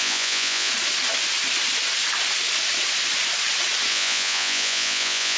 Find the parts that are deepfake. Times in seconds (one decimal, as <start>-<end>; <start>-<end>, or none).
0.0-0.7; 3.9-5.4